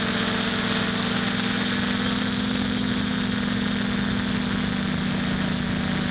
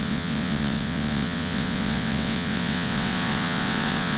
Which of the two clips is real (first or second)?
first